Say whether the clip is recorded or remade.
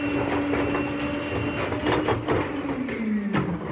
recorded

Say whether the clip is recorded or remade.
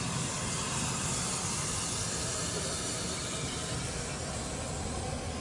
recorded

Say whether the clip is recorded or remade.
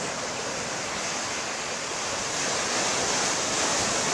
recorded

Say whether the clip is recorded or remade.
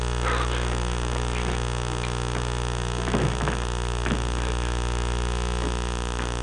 recorded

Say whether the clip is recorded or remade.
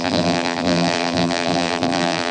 remade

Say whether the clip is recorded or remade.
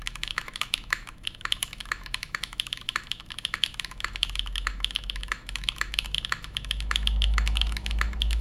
remade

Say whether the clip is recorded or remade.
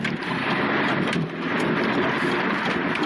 remade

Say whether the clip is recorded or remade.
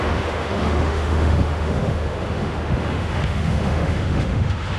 remade